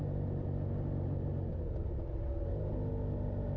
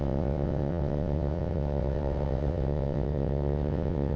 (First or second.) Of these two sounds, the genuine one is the first